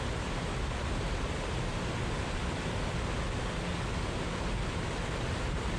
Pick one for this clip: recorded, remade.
recorded